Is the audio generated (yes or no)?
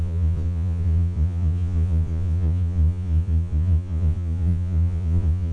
yes